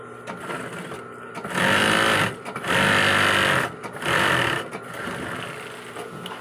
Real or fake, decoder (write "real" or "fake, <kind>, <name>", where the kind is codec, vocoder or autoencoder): real